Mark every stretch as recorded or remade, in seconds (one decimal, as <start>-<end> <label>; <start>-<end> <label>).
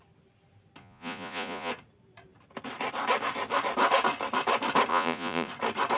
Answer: 0.0-0.8 recorded; 0.8-1.7 remade; 1.7-4.9 recorded; 4.9-5.5 remade; 5.5-6.0 recorded